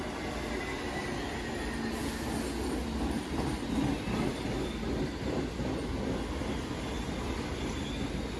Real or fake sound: real